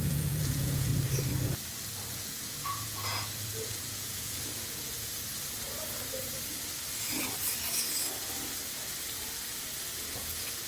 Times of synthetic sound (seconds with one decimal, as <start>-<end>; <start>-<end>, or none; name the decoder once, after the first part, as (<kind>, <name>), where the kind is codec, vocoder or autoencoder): 0.0-0.9 (vocoder, Vocos); 2.1-5.3; 9.9-10.7